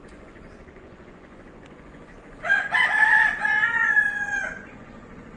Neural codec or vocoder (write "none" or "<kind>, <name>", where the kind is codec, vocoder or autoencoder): vocoder, Vocos